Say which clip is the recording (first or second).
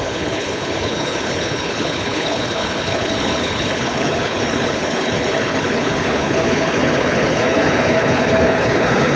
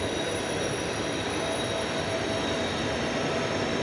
second